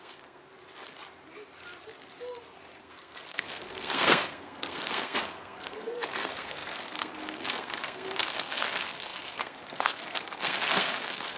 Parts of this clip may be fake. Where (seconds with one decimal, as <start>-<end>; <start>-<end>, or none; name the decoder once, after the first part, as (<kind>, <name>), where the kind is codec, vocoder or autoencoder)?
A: 0.0-0.4 (codec, SNAC); 2.8-11.4